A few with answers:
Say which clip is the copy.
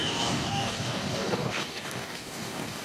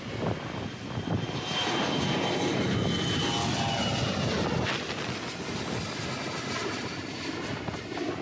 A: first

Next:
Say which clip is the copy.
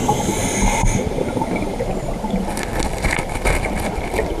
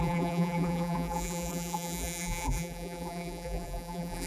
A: second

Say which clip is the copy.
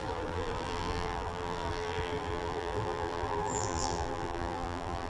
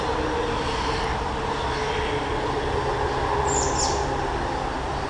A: first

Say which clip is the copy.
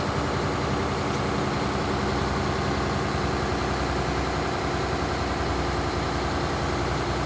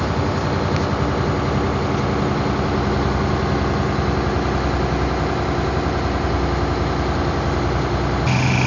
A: first